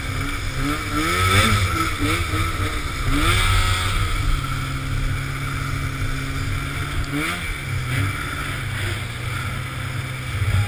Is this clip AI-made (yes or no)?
no